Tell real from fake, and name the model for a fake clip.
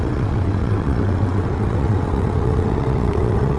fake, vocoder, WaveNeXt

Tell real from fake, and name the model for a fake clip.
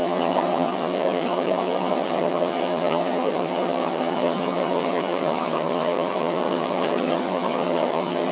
fake, vocoder, HiFi-GAN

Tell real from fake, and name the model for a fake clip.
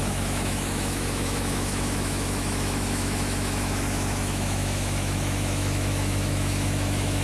fake, autoencoder, DAC-VAE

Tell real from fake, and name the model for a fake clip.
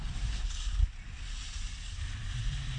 real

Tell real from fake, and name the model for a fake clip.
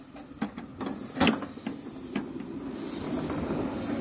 real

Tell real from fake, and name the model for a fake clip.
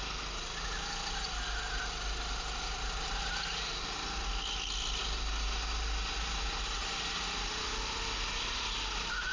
real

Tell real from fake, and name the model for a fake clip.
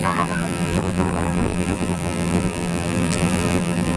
fake, vocoder, BigVGAN v2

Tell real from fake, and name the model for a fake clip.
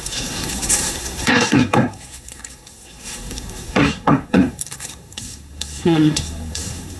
fake, codec, SNAC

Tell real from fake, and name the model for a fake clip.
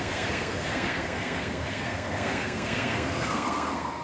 fake, codec, SNAC